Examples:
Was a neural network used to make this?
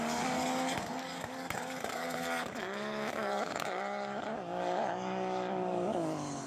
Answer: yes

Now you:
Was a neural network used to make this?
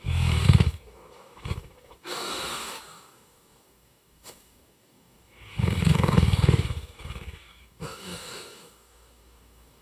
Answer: yes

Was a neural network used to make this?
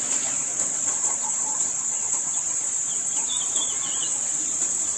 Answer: yes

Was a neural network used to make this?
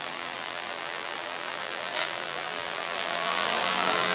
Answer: yes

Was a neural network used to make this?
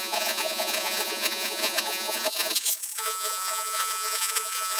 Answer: yes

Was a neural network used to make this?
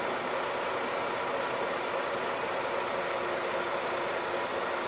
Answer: no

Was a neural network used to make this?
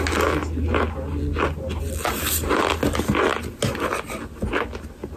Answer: no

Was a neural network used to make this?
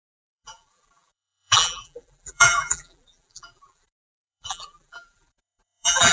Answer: yes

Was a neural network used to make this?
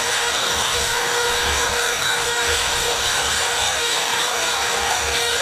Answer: yes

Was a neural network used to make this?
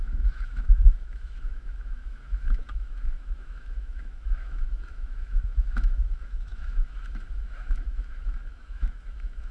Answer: yes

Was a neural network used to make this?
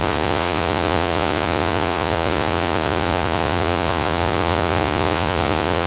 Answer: yes